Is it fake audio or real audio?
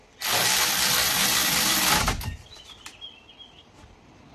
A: fake